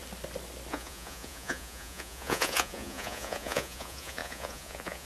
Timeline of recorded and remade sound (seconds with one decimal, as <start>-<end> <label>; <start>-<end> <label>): 0.0-0.7 recorded; 0.7-5.0 remade